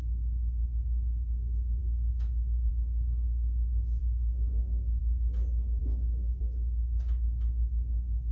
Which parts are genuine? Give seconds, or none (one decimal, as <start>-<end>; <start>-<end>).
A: 0.0-1.8; 2.7-4.0; 5.0-5.8; 6.4-8.3